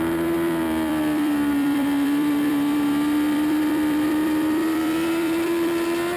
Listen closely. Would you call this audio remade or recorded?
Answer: remade